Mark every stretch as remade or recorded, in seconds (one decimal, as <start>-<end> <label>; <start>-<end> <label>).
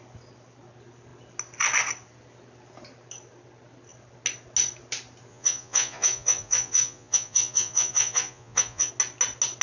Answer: 0.0-5.3 recorded; 5.3-8.9 remade; 8.9-9.6 recorded